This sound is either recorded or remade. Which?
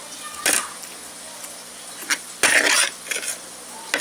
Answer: recorded